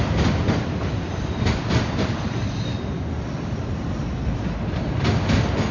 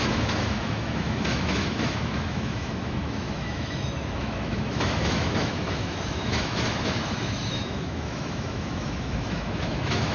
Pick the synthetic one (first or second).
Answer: second